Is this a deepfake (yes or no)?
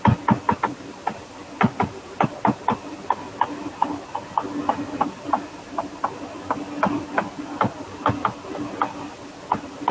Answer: no